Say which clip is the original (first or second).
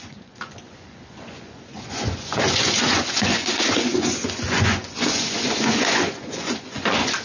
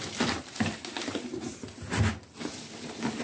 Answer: second